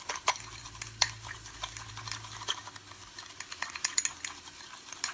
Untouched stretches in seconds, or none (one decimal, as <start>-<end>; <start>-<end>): 0.0-5.1